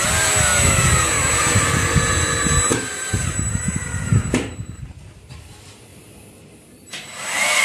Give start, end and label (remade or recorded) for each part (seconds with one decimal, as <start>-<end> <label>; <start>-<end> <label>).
0.0-2.7 recorded; 2.7-5.5 remade; 5.5-5.9 recorded; 5.9-7.6 remade